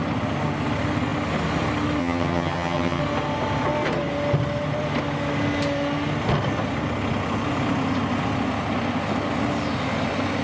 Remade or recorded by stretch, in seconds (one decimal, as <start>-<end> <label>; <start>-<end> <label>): 0.0-2.0 recorded; 2.0-3.0 remade; 3.0-10.4 recorded